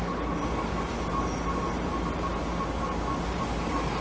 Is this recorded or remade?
recorded